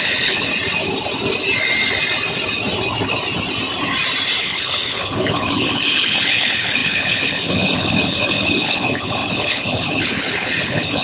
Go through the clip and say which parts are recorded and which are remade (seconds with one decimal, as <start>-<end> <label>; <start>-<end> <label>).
0.0-0.5 remade; 0.5-4.4 recorded; 4.4-11.0 remade